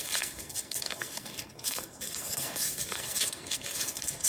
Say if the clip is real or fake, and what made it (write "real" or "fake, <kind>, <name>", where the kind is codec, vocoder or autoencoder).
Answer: fake, codec, SNAC